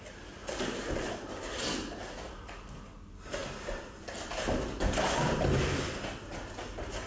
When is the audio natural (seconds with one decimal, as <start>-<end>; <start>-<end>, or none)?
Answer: 0.0-7.1